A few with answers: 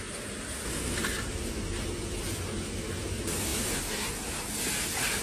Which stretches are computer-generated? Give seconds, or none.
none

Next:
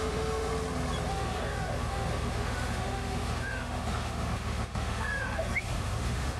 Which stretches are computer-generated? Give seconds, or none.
0.0-0.5 (autoencoder, DAC-VAE); 1.1-6.4

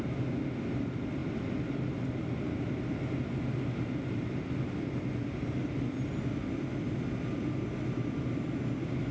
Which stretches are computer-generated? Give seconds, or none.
none

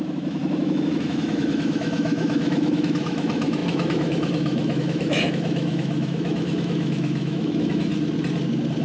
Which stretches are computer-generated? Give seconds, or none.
0.0-7.9 (autoencoder, DAC-VAE)

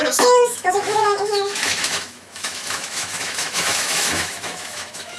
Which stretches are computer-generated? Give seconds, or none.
0.0-5.2 (autoencoder, DAC-VAE)

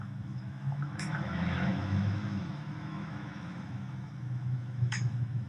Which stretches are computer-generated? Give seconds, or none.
0.0-5.5 (autoencoder, DAC-VAE)